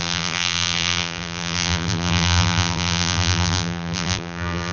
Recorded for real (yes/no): no